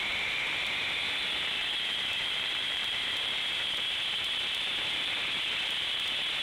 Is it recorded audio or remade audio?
remade